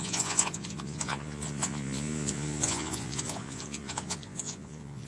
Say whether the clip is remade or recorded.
remade